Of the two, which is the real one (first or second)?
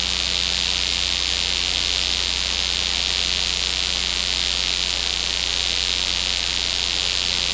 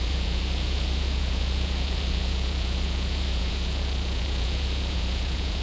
first